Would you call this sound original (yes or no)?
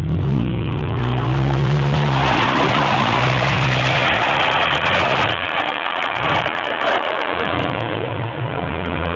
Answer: no